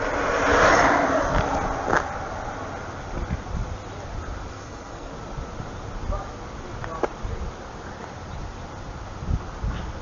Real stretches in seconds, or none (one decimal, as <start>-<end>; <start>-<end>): 0.0-4.5; 5.1-10.0